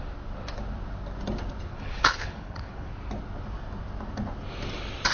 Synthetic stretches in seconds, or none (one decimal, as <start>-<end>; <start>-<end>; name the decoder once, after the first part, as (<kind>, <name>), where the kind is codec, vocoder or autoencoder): 1.7-2.9 (codec, HILCodec)